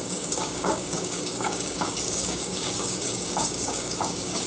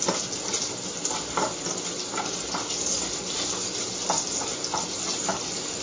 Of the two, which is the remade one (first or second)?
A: first